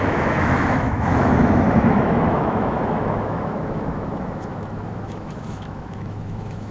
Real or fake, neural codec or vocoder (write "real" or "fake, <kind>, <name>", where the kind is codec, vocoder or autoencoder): fake, autoencoder, DAC-VAE